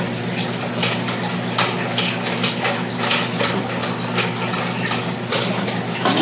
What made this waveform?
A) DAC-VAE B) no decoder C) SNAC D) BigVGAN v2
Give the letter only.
B